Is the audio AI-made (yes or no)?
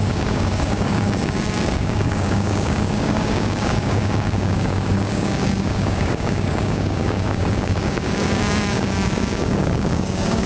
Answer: yes